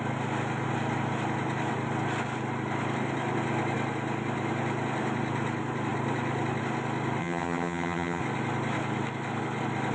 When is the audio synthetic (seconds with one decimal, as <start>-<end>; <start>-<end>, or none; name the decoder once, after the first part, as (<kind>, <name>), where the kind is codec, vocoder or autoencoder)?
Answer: 7.2-8.2 (vocoder, HiFi-GAN)